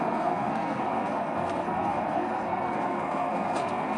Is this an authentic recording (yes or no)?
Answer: no